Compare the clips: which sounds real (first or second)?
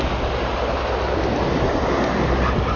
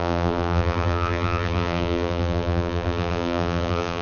first